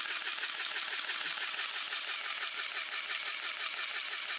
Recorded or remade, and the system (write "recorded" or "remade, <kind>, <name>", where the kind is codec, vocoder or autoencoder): recorded